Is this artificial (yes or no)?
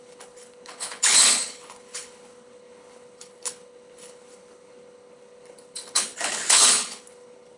yes